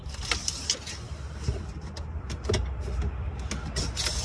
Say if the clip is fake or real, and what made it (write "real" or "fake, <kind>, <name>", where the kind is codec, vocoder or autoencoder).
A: real